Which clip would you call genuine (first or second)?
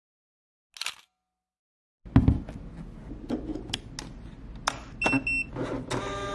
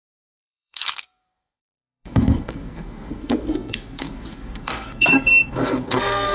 first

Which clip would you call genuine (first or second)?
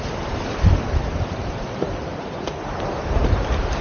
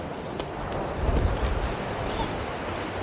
second